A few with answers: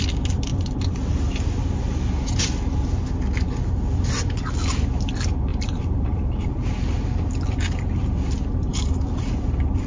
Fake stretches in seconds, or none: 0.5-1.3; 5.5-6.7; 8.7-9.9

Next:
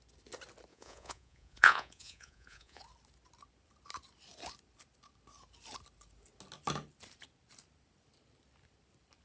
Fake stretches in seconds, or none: 0.7-2.8

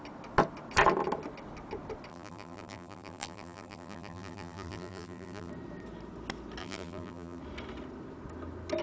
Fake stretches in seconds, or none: 2.1-5.5; 6.6-7.4